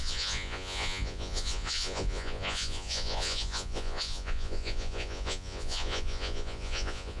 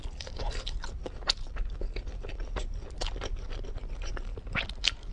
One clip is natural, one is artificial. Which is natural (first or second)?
second